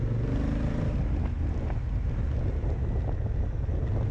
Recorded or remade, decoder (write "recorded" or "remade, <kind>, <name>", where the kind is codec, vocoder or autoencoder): recorded